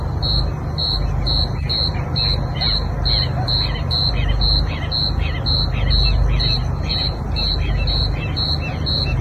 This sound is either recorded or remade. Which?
recorded